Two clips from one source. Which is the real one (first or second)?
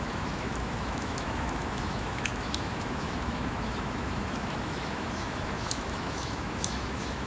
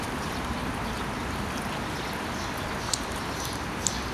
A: second